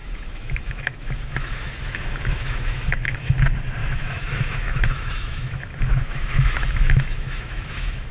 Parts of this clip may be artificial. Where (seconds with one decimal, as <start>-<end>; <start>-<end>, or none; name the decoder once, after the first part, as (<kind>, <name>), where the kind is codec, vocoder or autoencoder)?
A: 0.0-3.4 (autoencoder, DAC-VAE); 3.8-8.1